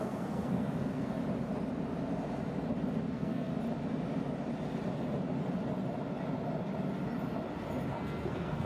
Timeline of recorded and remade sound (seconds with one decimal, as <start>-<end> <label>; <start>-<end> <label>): 0.0-1.2 remade; 1.2-3.1 recorded; 3.1-3.5 remade; 3.5-7.9 recorded; 7.9-8.7 remade